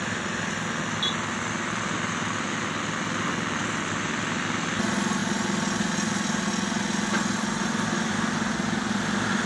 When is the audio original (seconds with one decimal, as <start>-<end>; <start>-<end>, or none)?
0.0-9.5